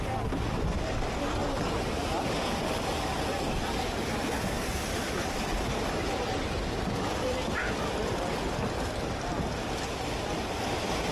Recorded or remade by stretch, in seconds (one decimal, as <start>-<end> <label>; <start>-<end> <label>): 0.0-11.1 recorded